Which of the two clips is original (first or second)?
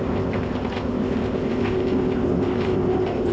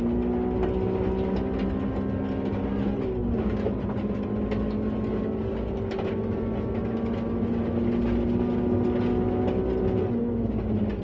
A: second